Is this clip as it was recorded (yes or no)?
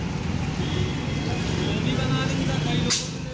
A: yes